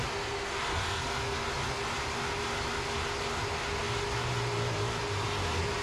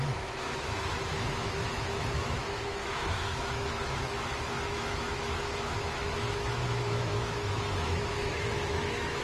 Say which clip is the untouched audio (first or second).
first